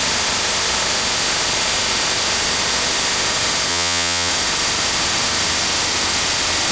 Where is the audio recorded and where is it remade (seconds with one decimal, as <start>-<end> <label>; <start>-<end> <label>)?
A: 0.0-3.7 recorded; 3.7-4.3 remade; 4.3-6.7 recorded